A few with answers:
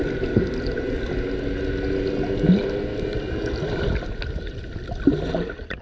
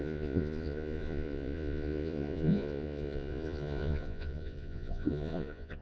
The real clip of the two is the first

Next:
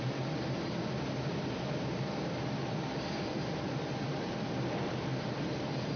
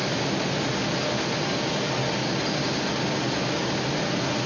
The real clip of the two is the second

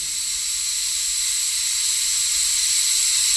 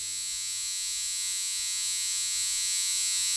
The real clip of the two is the first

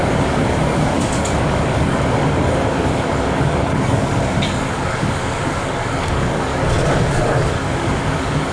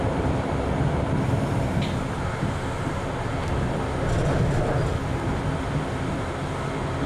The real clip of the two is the second